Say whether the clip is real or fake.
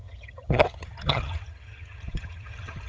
fake